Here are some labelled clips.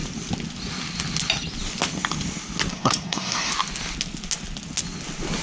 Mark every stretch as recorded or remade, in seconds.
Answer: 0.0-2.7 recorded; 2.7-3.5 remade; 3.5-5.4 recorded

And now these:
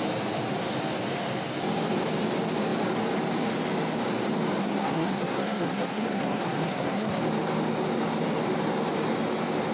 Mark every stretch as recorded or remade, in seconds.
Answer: 0.0-4.6 recorded; 4.6-7.2 remade; 7.2-9.7 recorded

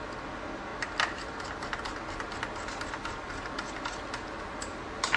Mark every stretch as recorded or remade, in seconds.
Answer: 0.0-5.2 recorded

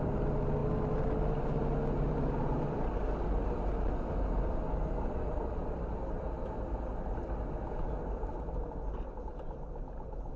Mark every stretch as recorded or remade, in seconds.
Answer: 0.0-10.4 recorded

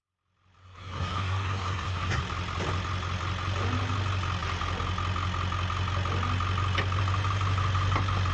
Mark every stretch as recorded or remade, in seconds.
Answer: 0.0-0.6 recorded; 0.6-2.2 remade; 2.2-8.3 recorded

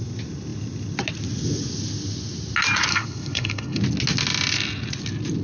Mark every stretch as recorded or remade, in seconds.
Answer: 0.0-2.9 recorded; 2.9-3.8 remade; 3.8-5.4 recorded